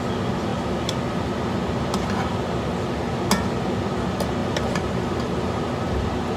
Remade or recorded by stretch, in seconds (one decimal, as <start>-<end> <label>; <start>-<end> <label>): 0.0-4.4 recorded; 4.4-5.6 remade; 5.6-6.4 recorded